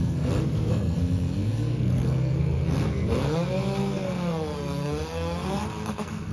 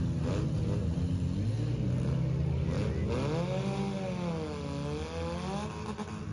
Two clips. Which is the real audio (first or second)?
second